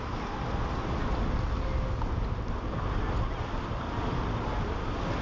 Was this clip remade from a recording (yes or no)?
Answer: no